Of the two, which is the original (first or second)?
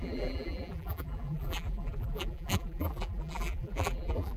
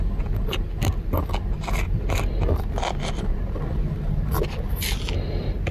second